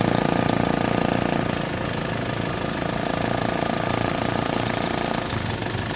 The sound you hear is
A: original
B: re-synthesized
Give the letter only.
A